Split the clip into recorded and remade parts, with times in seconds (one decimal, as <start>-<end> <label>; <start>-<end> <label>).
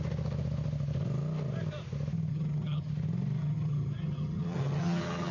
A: 0.0-2.3 recorded; 2.3-2.9 remade; 2.9-3.4 recorded; 3.4-5.3 remade